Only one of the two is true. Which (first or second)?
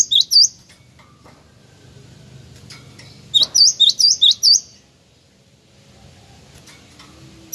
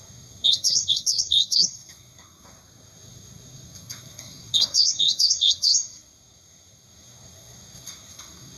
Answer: first